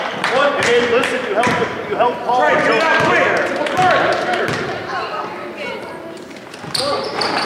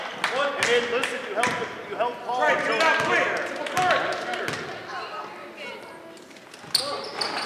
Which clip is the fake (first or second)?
first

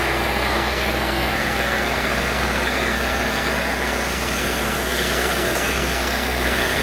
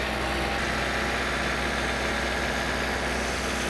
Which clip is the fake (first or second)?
first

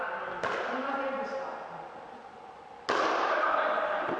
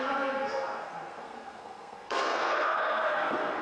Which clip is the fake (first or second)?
second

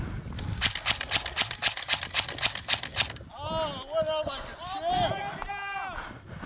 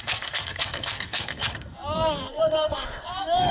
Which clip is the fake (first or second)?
second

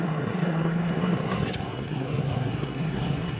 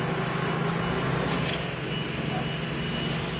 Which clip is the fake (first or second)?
first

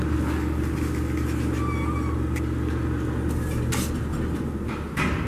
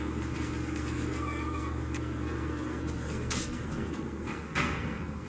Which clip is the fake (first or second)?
second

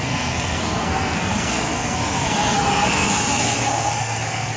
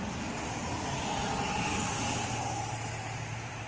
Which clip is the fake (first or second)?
first